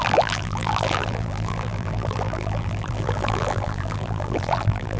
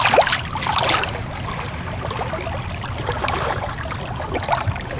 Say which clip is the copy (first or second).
first